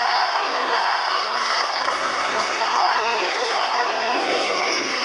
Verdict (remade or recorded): remade